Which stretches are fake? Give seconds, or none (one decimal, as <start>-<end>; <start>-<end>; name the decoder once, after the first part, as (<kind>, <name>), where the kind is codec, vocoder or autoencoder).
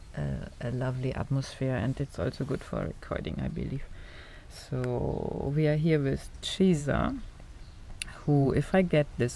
6.8-7.7 (vocoder, Vocos); 8.1-9.4